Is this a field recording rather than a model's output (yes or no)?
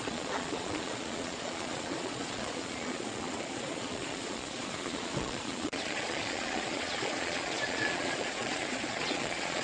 no